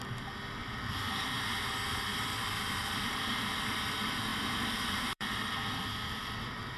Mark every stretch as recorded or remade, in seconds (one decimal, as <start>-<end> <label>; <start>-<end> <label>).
0.0-0.6 recorded; 0.6-1.4 remade; 1.4-1.9 recorded; 1.9-3.4 remade; 3.4-4.3 recorded; 4.3-5.5 remade; 5.5-6.8 recorded